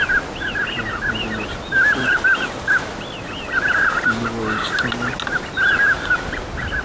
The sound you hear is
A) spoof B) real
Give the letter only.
B